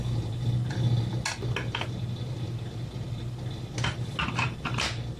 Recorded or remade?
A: recorded